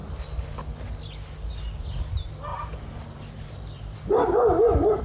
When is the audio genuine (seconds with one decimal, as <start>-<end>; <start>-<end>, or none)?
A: 0.0-2.5